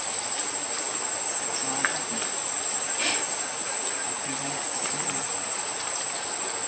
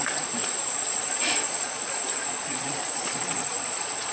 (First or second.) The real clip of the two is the first